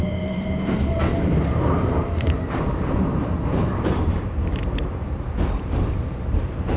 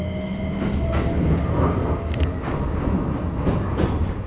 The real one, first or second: second